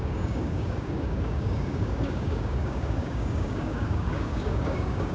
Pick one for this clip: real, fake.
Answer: fake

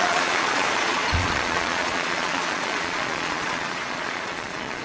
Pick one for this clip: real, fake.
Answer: fake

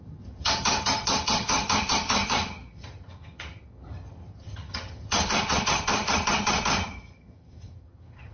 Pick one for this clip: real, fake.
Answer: fake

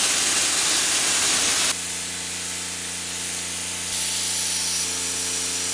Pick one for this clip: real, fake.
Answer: real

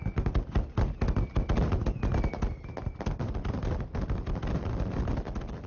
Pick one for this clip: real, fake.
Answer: real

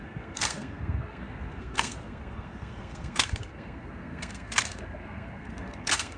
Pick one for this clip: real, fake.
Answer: fake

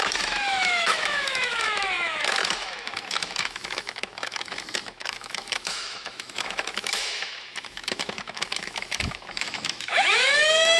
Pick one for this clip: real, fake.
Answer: fake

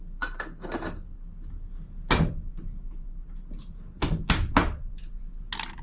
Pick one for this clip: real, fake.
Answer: real